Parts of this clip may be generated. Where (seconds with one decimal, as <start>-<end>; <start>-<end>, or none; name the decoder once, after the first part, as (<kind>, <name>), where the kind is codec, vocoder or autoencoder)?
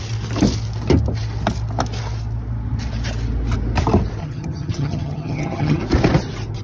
4.2-5.8 (vocoder, HiFi-GAN)